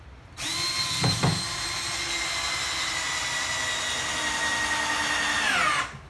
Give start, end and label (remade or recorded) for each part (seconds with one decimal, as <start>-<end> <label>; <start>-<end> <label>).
0.0-6.1 recorded